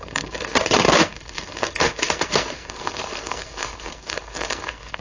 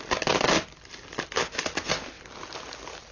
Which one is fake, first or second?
first